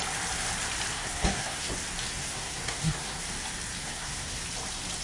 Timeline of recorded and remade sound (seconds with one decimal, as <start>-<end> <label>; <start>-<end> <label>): 0.0-0.9 recorded; 0.9-1.7 remade; 1.7-2.2 recorded; 2.2-3.3 remade; 3.3-3.8 recorded; 3.8-4.4 remade; 4.4-5.0 recorded